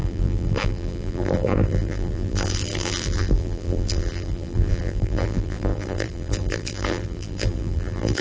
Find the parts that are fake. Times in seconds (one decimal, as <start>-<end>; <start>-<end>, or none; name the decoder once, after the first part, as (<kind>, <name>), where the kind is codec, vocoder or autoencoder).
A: 0.0-8.2 (vocoder, BigVGAN v2)